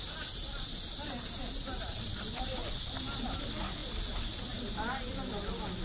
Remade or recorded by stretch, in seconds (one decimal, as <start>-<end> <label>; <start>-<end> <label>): 0.0-5.8 recorded